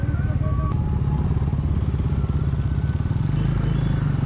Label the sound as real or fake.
real